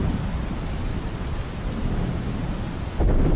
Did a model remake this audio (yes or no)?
no